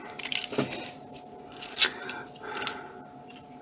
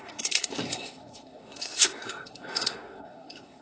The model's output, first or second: second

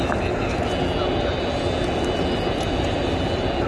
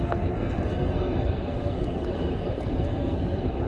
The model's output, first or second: second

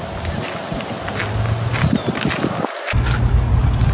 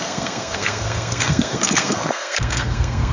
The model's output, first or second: second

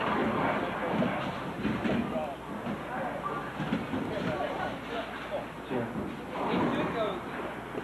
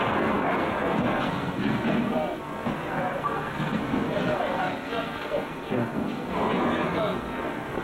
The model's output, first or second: second